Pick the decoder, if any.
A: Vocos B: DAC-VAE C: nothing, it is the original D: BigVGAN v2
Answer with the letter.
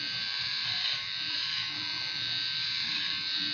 D